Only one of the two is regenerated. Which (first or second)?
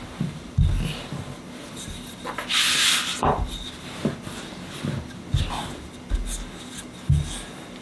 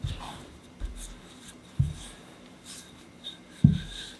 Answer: second